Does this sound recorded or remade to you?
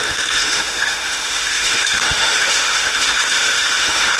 remade